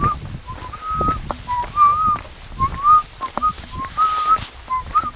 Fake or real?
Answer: real